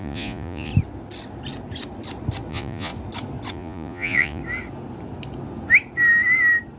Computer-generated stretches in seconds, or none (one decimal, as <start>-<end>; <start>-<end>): 0.0-0.7; 2.5-2.9; 3.5-4.4